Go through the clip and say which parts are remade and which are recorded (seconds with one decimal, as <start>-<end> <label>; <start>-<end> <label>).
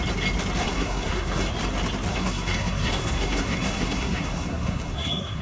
0.0-0.6 recorded; 0.6-1.5 remade; 1.5-2.1 recorded; 2.1-5.4 remade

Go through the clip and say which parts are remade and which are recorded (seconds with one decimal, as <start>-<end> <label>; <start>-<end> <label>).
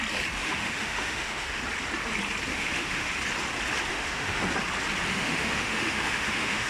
0.0-0.4 recorded; 0.4-1.6 remade; 1.6-2.5 recorded; 2.5-3.1 remade; 3.1-3.9 recorded; 3.9-4.4 remade; 4.4-5.1 recorded; 5.1-6.7 remade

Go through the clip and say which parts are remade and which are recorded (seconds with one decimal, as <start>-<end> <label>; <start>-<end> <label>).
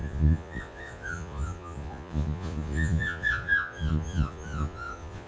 0.0-5.3 remade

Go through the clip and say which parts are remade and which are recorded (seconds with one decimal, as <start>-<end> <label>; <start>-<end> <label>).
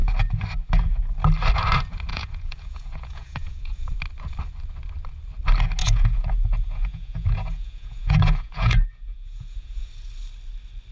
0.0-2.1 recorded; 2.1-3.9 remade; 3.9-5.8 recorded; 5.8-9.9 remade; 9.9-10.9 recorded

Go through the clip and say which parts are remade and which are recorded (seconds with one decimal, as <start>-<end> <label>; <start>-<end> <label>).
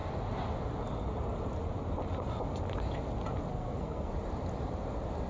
0.0-3.5 recorded; 3.5-4.1 remade; 4.1-5.3 recorded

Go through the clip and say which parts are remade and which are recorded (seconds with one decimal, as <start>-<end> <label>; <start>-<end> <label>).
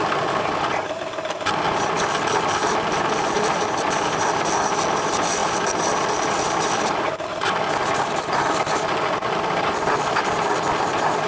0.0-11.3 recorded